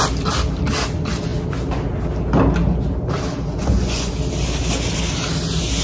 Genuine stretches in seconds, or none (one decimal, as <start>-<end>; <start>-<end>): 0.0-3.6; 4.1-5.8